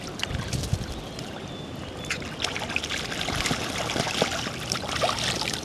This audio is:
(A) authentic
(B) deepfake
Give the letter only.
A